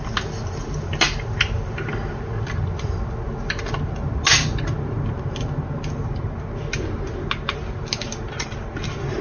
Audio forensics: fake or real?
real